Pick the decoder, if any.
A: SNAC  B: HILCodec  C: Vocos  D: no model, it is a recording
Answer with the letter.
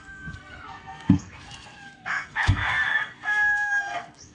A